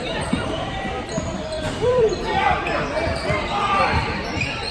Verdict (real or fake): fake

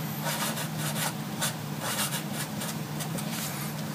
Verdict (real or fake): fake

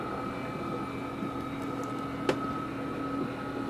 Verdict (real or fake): real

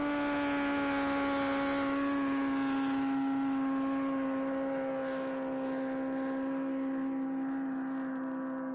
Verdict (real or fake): real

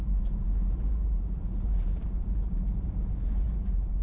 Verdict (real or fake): fake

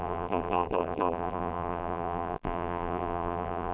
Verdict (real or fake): fake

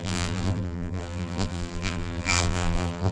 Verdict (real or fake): fake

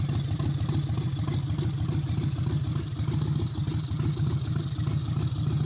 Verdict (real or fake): real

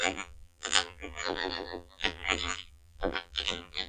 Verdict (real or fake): fake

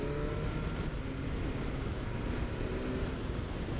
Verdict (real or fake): real